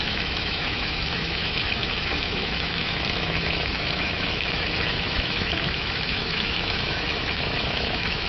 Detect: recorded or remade remade